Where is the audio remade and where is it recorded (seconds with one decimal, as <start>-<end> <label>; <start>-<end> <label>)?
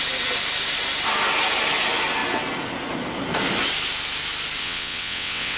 0.0-4.6 recorded; 4.6-5.6 remade